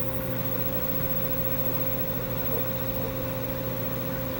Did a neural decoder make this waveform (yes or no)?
no